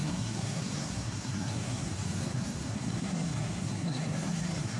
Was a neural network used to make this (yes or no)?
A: yes